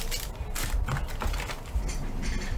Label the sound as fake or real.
real